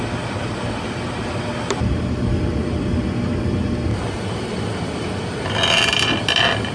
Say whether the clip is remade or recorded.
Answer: recorded